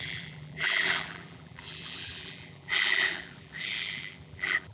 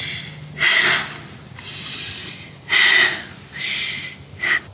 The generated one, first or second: first